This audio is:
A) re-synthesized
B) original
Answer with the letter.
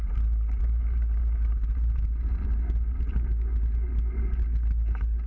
B